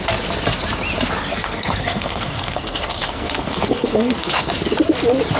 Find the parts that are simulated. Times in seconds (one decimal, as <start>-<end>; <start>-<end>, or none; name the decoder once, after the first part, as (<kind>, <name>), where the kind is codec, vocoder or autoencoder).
1.3-4.5 (codec, SNAC)